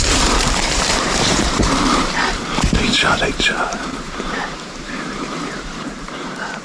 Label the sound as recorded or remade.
remade